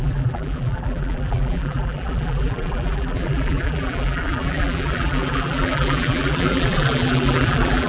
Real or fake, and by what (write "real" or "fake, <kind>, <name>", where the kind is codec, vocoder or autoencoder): fake, vocoder, BigVGAN v2